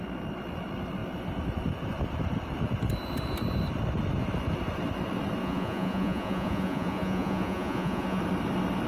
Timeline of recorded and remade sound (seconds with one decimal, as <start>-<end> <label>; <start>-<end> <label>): 0.0-5.4 recorded; 5.4-8.2 remade; 8.2-8.9 recorded